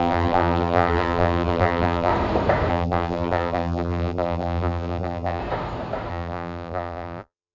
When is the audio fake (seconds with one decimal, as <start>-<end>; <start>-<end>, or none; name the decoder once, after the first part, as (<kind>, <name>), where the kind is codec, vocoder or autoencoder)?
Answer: 0.0-2.1 (vocoder, BigVGAN v2); 2.7-5.4; 6.1-7.5